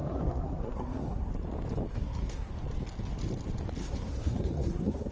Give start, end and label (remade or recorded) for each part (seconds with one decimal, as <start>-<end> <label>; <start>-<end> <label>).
0.0-1.3 remade; 1.3-1.9 recorded; 1.9-2.5 remade; 2.5-3.8 recorded; 3.8-5.1 remade